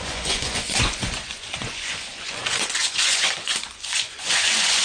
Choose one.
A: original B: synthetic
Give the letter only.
B